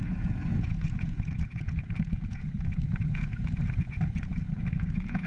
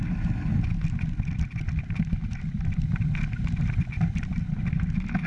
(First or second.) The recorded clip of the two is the second